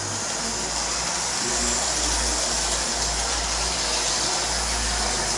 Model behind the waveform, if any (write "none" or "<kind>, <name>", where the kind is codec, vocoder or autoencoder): none